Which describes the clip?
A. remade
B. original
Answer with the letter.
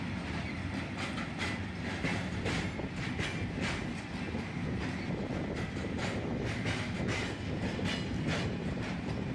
B